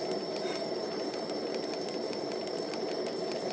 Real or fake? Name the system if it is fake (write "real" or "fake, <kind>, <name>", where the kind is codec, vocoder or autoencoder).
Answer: fake, vocoder, BigVGAN v2